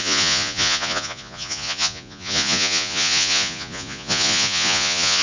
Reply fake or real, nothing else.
fake